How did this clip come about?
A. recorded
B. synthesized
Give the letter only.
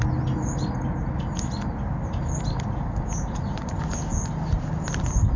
A